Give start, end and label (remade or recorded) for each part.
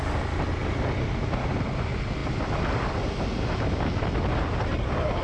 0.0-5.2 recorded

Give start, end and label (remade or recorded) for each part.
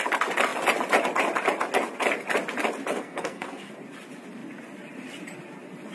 0.0-2.9 recorded; 2.9-3.7 remade; 3.7-5.9 recorded